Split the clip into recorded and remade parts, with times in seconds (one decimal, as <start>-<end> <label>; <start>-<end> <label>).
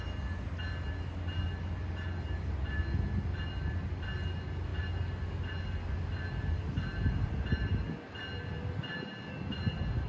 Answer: 0.0-10.1 recorded